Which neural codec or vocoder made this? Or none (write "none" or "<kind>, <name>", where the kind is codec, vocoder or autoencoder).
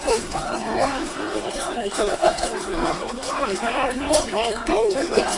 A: codec, SNAC